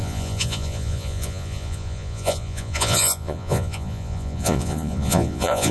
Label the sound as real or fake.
fake